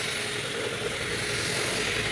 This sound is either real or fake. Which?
real